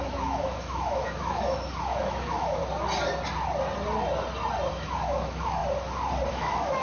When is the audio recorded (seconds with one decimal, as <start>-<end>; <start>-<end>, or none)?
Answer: 2.6-4.7; 5.6-6.3